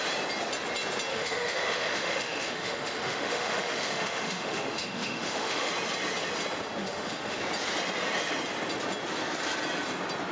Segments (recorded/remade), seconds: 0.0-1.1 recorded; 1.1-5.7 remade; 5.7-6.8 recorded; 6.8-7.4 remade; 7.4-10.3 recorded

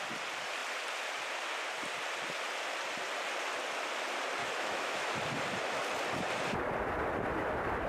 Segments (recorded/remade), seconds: 0.0-4.4 recorded; 4.4-5.1 remade; 5.1-7.9 recorded

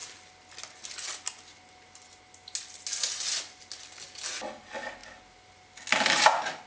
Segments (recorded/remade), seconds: 0.0-6.7 recorded

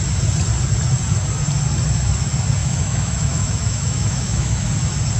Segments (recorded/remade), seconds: 0.0-2.6 recorded; 2.6-4.7 remade; 4.7-5.2 recorded

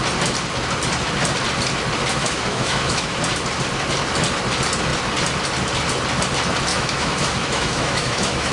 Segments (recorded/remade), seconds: 0.0-2.2 recorded; 2.2-3.2 remade; 3.2-6.7 recorded; 6.7-8.5 remade

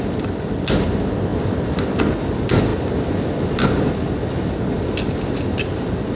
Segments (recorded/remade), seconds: 0.0-6.2 recorded

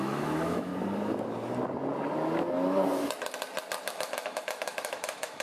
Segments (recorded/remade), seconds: 0.0-0.7 remade; 0.7-3.9 recorded; 3.9-5.4 remade